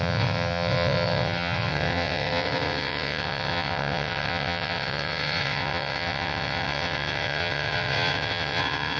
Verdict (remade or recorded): remade